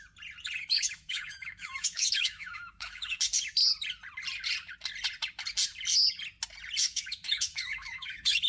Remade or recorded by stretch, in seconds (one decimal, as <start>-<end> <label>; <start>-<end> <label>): 0.0-0.6 recorded; 0.6-3.2 remade; 3.2-6.8 recorded; 6.8-8.5 remade